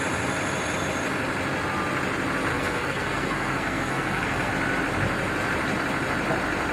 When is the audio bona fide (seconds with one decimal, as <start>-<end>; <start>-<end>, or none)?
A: 0.0-2.5; 4.5-6.7